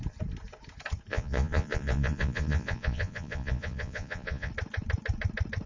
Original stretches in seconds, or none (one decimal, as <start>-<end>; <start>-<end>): 0.0-1.1; 4.5-5.7